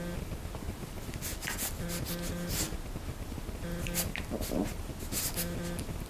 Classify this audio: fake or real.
real